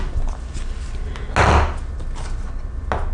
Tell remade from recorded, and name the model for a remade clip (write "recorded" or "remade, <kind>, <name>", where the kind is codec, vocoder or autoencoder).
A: recorded